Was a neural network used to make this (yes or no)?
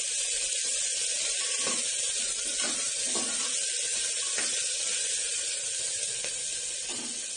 no